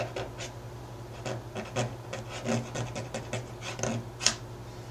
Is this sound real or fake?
real